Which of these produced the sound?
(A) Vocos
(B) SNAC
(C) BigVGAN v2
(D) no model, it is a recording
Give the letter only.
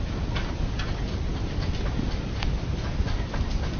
D